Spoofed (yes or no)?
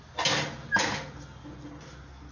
no